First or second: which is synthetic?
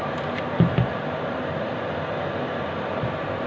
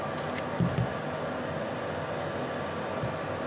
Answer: first